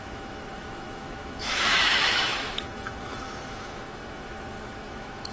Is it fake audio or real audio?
fake